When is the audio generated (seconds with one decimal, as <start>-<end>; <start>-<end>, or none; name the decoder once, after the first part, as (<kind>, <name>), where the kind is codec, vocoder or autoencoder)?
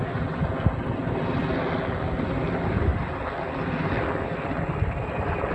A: none